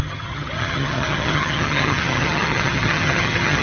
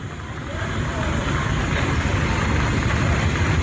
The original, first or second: second